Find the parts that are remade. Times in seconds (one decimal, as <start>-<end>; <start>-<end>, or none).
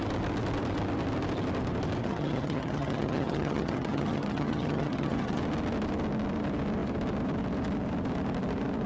2.0-5.4